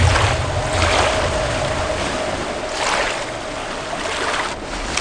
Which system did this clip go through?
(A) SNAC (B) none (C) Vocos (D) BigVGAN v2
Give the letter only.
B